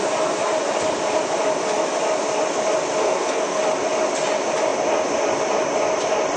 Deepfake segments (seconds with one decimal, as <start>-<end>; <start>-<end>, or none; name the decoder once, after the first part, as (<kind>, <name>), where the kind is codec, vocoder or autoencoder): 3.0-3.6 (codec, SNAC)